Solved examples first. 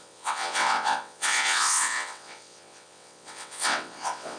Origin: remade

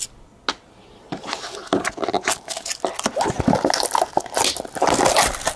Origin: recorded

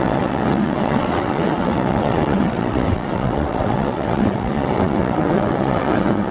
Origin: remade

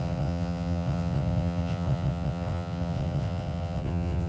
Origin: remade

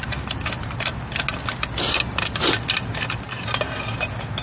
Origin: recorded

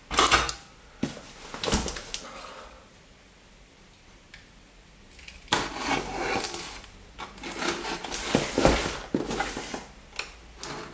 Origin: recorded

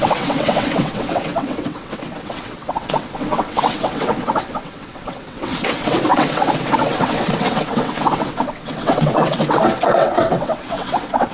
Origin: remade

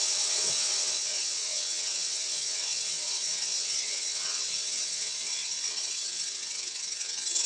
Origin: remade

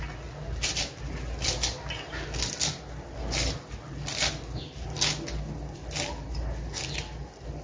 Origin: recorded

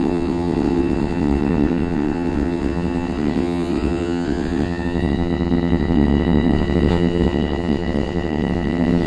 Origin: remade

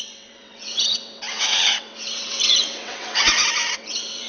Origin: remade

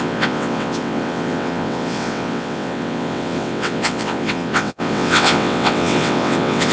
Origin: remade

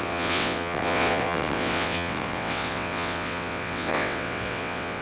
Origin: remade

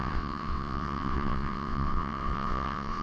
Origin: remade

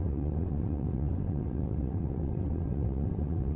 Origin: remade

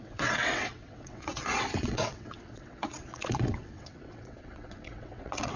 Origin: remade